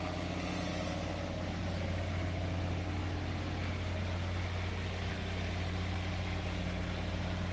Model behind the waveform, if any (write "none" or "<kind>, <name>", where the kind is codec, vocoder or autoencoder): none